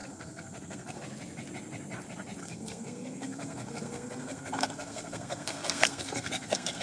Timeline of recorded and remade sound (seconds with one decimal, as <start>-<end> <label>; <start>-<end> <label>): 0.0-1.0 remade; 1.0-2.4 recorded; 2.4-6.8 remade